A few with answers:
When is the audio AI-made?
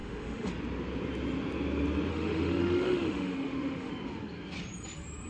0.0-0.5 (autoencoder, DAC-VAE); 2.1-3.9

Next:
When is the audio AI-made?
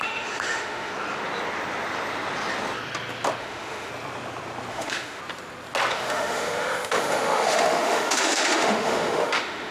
0.0-0.9 (autoencoder, DAC-VAE); 3.4-3.9; 4.7-5.2; 5.9-9.7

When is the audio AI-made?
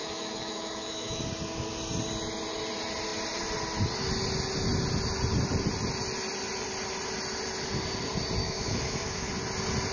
0.0-1.2 (autoencoder, DAC-VAE); 8.4-9.3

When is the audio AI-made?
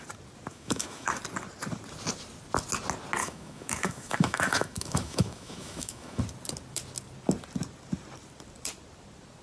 0.5-1.2 (autoencoder, DAC-VAE); 3.2-6.2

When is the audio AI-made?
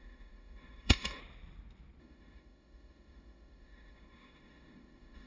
0.0-1.2 (autoencoder, DAC-VAE); 2.0-5.3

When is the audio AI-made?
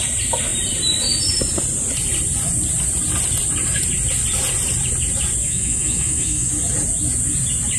5.4-6.5 (autoencoder, DAC-VAE)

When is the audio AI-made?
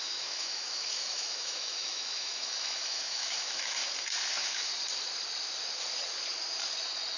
0.0-3.8 (autoencoder, DAC-VAE); 4.3-4.7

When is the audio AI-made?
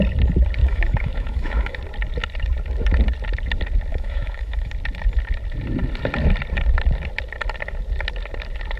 0.6-1.8 (autoencoder, DAC-VAE); 3.9-4.7